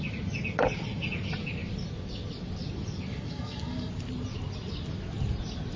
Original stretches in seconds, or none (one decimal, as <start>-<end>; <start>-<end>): 0.0-3.1; 3.9-5.8